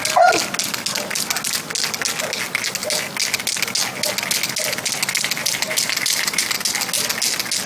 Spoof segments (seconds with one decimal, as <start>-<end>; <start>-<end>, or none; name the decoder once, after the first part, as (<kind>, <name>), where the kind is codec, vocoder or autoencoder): 5.4-6.4 (vocoder, BigVGAN v2)